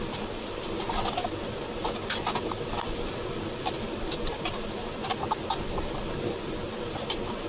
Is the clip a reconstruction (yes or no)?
no